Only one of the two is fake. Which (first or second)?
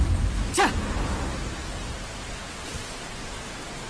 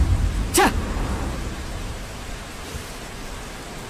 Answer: second